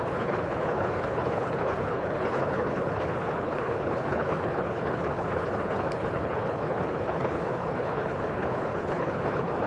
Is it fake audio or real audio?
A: fake